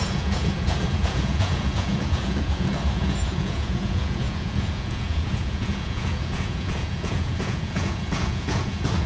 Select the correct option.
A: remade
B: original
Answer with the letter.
A